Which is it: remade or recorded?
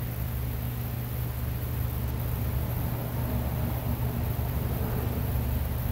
recorded